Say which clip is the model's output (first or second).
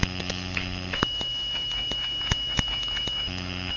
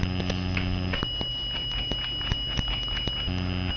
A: first